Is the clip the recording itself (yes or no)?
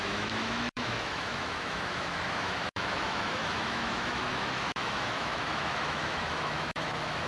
no